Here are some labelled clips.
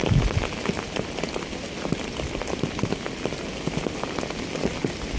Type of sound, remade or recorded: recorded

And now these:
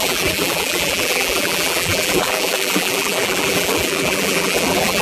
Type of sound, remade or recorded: remade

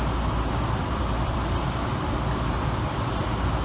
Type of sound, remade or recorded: remade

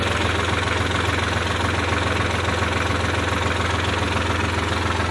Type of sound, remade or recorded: recorded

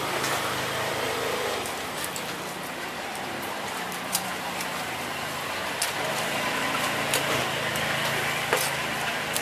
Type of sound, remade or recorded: remade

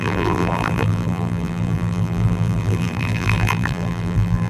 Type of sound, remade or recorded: remade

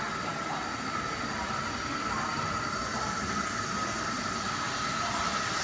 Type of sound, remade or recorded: recorded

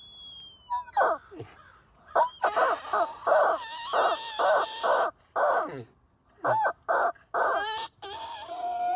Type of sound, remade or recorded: remade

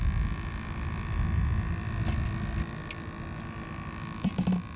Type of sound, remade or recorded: recorded